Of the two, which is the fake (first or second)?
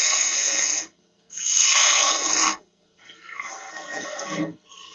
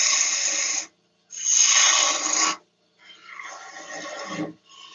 first